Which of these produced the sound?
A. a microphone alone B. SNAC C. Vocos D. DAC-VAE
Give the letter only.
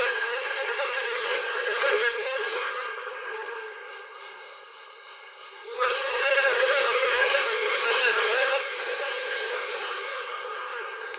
B